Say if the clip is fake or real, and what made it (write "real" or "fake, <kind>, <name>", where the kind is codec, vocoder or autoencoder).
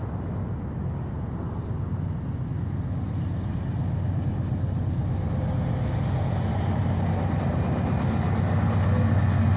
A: real